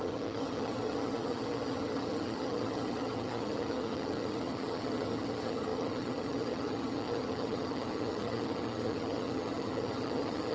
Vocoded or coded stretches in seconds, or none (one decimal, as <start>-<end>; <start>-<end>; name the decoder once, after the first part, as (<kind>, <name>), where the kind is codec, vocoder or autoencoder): 0.0-10.5 (vocoder, HiFi-GAN)